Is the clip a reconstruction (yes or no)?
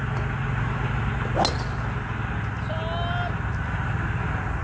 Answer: no